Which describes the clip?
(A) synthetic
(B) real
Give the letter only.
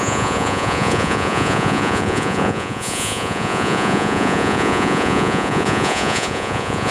A